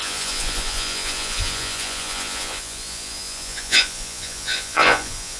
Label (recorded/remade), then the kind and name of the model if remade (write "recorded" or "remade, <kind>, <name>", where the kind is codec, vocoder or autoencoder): remade, vocoder, Vocos